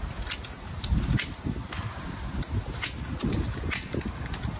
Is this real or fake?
real